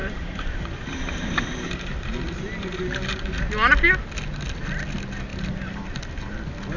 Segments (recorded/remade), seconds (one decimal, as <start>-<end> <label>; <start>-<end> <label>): 0.0-2.0 remade; 2.0-5.3 recorded; 5.3-5.9 remade; 5.9-6.8 recorded